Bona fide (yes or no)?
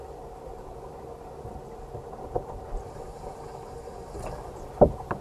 no